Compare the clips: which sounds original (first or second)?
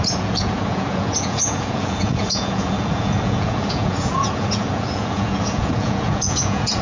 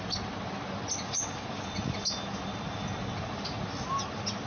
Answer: second